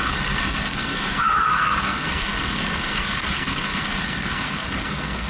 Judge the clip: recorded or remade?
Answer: remade